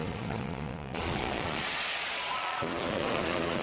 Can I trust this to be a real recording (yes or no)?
no